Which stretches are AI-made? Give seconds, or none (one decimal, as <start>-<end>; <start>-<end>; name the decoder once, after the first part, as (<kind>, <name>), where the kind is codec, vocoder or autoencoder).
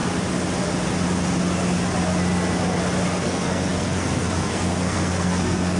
3.2-5.8 (codec, SNAC)